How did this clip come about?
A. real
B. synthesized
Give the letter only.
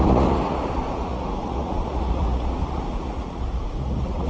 B